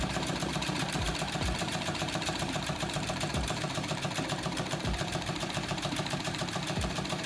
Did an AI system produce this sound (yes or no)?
yes